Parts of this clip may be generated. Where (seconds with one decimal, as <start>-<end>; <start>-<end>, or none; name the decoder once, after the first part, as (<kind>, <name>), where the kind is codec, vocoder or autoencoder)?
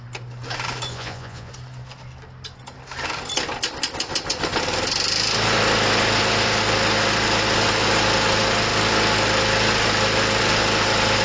0.9-1.5 (vocoder, Vocos)